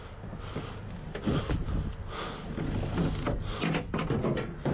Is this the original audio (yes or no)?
yes